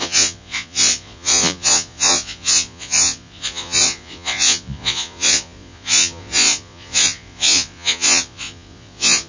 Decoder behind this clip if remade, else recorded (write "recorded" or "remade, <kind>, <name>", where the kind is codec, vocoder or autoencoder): remade, vocoder, Vocos